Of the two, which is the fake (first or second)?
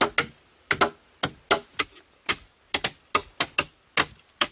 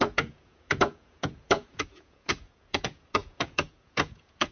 second